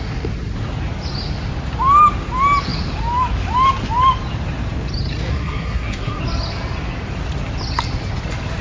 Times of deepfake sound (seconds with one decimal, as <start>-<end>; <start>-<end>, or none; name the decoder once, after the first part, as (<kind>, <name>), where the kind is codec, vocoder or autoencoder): 5.3-6.2 (codec, SNAC)